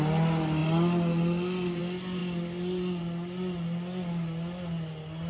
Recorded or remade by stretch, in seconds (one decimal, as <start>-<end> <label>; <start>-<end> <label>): 0.0-5.3 recorded

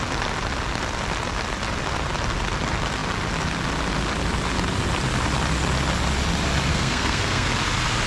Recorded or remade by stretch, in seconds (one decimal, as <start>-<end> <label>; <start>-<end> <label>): 0.0-6.7 recorded; 6.7-7.5 remade; 7.5-8.1 recorded

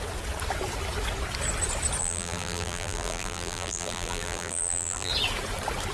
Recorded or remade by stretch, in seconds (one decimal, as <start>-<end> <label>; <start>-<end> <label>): 0.0-2.0 recorded; 2.0-5.1 remade; 5.1-5.9 recorded

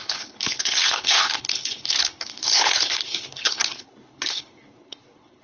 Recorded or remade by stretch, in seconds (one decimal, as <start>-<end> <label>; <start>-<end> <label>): 0.0-5.4 remade

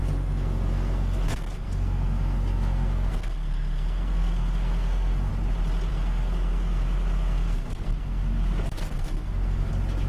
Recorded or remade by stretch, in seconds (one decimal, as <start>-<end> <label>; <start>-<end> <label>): 0.0-5.3 remade; 5.3-5.9 recorded; 5.9-9.7 remade; 9.7-10.1 recorded